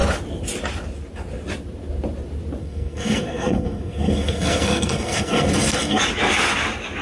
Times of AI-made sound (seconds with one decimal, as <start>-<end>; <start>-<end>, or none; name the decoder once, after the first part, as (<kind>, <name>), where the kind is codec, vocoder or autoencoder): 2.6-6.0 (codec, SNAC)